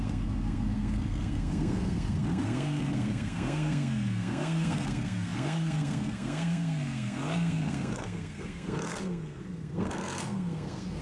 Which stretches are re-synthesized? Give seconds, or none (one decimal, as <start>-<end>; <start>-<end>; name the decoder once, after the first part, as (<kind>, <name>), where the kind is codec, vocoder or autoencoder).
0.0-11.0 (codec, SNAC)